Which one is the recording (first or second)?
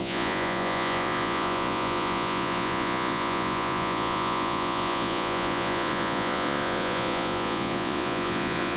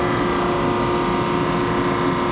second